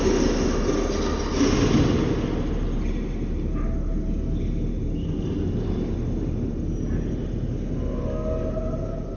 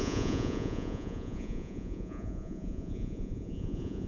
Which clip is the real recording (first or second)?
first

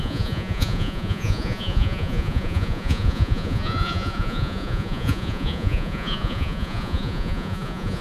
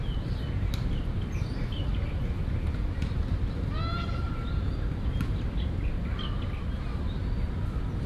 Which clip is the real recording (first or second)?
second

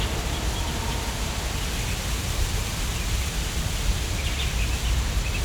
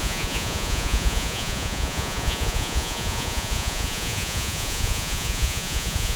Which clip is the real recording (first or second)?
first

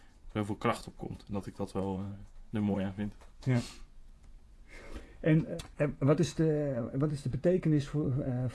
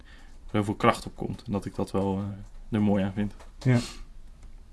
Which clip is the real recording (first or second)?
second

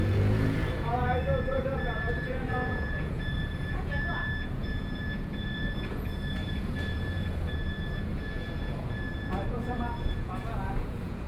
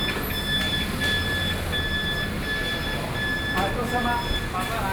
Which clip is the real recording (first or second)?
second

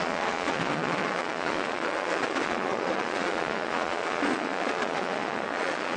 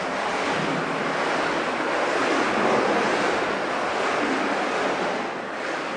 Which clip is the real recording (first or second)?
second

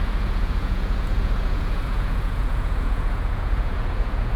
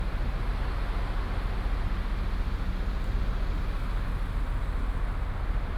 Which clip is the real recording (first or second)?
second